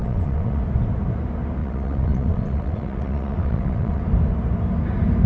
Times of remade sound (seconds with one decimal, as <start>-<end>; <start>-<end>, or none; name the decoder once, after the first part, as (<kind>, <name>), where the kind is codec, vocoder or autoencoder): 0.0-0.6 (vocoder, WaveNeXt); 1.6-4.0